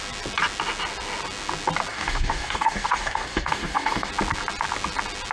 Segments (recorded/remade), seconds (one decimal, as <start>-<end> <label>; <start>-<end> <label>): 0.0-1.9 recorded; 1.9-4.1 remade; 4.1-5.3 recorded